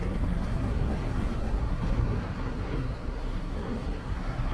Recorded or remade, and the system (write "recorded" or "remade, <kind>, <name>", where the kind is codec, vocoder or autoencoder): remade, codec, SNAC